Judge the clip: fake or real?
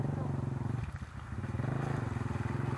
real